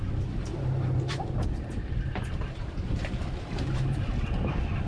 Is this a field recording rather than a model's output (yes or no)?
no